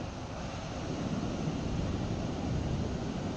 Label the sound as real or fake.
real